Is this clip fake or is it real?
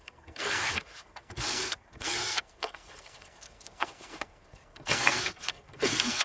fake